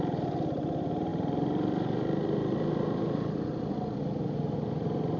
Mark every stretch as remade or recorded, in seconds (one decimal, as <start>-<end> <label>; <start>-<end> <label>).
0.0-5.2 recorded